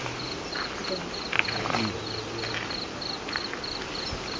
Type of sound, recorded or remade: recorded